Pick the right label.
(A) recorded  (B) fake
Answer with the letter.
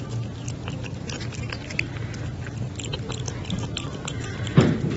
B